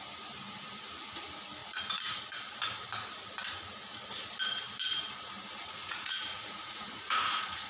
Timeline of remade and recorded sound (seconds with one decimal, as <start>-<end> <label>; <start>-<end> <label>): 0.0-1.6 recorded; 1.6-2.2 remade; 2.2-5.6 recorded; 5.6-7.7 remade